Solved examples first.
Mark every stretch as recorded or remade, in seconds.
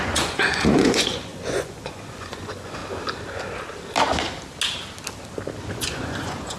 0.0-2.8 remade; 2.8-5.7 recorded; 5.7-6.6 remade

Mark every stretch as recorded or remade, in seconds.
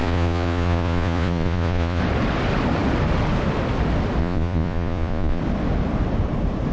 0.0-2.0 remade; 2.0-4.2 recorded; 4.2-5.4 remade; 5.4-6.7 recorded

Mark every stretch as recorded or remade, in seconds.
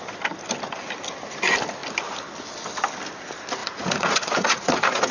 0.0-3.6 recorded; 3.6-5.1 remade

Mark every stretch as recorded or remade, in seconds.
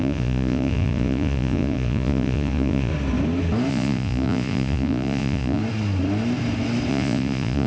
0.0-2.9 remade; 2.9-3.7 recorded; 3.7-5.6 remade; 5.6-6.9 recorded; 6.9-7.7 remade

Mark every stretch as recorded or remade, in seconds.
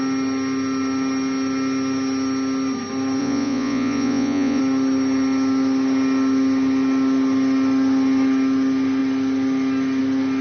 0.0-3.2 recorded; 3.2-4.6 remade; 4.6-10.4 recorded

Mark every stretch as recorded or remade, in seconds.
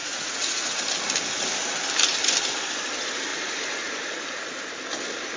0.0-0.8 remade; 0.8-5.4 recorded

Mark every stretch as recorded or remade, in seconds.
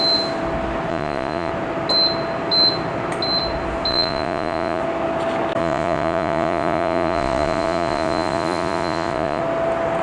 0.0-0.9 recorded; 0.9-1.5 remade; 1.5-3.9 recorded; 3.9-4.8 remade; 4.8-5.6 recorded; 5.6-9.4 remade; 9.4-10.0 recorded